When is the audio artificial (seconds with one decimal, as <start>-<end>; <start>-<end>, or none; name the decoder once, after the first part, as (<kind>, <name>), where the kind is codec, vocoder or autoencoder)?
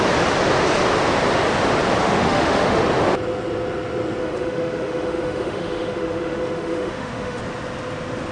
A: 2.0-2.8 (autoencoder, DAC-VAE); 4.2-7.4